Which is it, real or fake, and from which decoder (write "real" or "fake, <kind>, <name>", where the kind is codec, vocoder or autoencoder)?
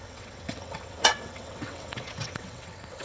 fake, vocoder, WaveNeXt